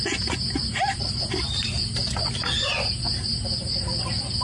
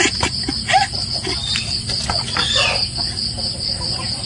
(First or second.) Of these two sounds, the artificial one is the second